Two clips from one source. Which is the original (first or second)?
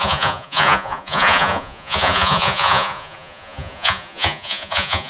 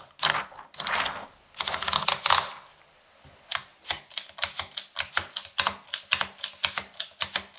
second